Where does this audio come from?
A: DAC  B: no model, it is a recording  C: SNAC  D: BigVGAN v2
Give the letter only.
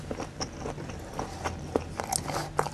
B